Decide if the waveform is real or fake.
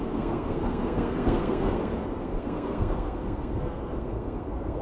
fake